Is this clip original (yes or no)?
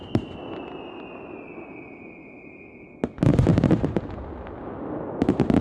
yes